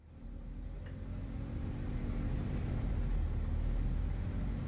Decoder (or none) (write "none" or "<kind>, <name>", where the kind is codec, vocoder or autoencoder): none